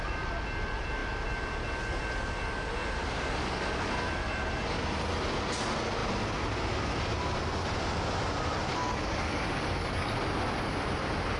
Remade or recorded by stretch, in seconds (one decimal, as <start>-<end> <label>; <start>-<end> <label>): 0.0-3.0 recorded; 3.0-3.9 remade; 3.9-8.7 recorded; 8.7-10.1 remade; 10.1-11.4 recorded